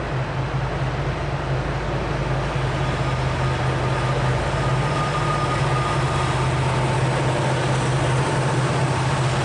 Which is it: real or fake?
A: real